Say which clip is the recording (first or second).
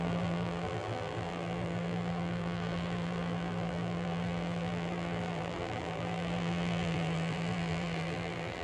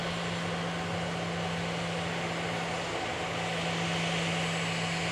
second